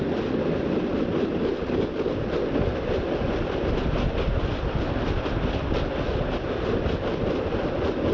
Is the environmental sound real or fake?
real